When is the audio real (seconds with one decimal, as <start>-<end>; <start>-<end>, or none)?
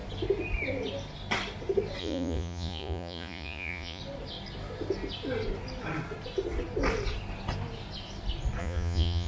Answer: 0.0-2.0; 4.0-8.6